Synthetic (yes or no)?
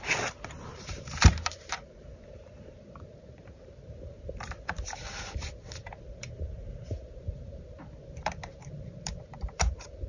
yes